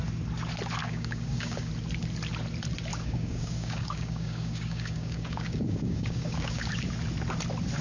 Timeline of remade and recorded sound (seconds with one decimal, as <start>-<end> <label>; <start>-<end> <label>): 0.0-0.8 recorded; 0.8-1.7 remade; 1.7-2.9 recorded; 2.9-6.7 remade; 6.7-7.8 recorded